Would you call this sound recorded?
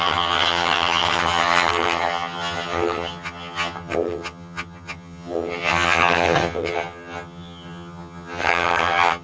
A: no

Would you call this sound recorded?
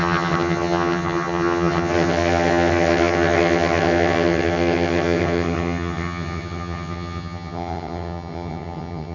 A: no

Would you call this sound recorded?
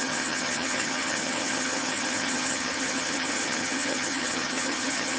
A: no